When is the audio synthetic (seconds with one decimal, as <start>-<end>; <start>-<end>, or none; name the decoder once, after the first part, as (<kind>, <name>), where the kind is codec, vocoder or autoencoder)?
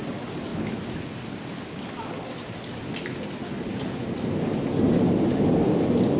none